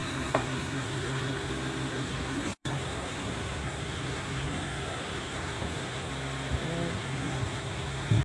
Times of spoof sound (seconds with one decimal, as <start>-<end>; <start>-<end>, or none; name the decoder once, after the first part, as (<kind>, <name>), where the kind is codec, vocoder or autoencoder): 0.0-1.5 (codec, SNAC); 1.9-6.1; 6.9-8.2